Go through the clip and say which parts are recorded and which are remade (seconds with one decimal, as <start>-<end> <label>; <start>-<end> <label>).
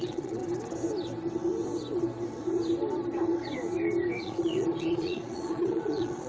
0.0-0.4 remade; 0.4-4.2 recorded; 4.2-6.3 remade